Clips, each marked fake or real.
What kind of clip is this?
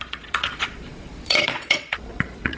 fake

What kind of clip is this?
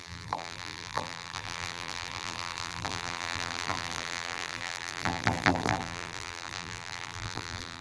fake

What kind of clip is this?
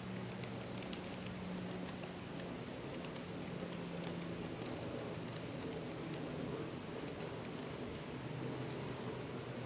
real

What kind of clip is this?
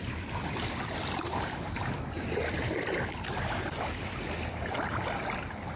real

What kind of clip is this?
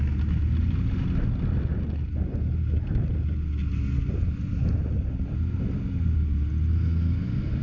real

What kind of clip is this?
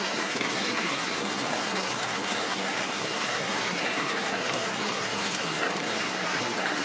fake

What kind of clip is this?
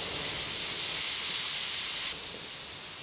real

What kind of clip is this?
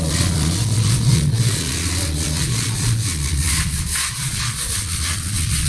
fake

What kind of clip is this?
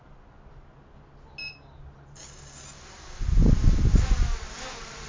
real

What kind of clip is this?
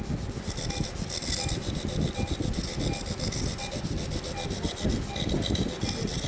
real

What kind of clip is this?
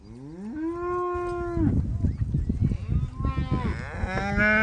real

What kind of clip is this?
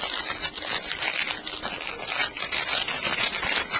real